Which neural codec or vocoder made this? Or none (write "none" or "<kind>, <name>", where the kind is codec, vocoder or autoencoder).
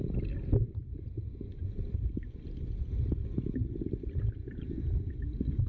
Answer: none